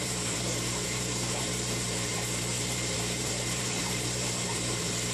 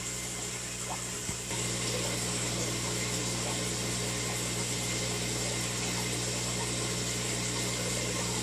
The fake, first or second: first